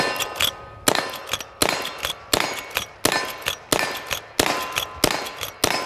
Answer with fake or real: real